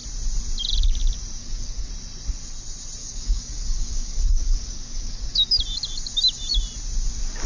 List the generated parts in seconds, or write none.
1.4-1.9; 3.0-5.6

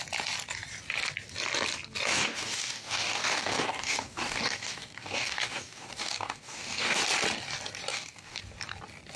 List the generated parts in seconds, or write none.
2.1-7.0; 7.9-8.4

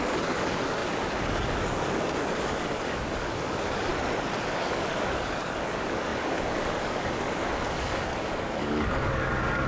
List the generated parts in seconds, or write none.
0.0-3.9; 4.4-9.7

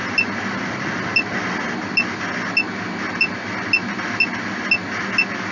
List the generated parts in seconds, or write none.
none